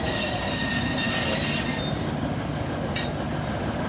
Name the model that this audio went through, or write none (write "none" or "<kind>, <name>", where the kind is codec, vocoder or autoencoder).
none